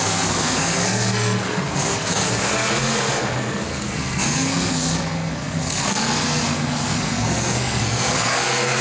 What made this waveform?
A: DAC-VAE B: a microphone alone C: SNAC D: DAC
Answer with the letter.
C